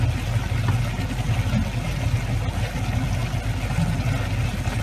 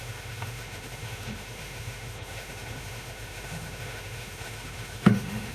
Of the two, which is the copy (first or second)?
second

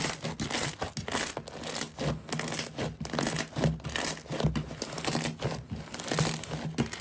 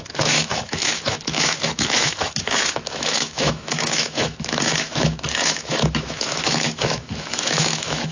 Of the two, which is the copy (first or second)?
second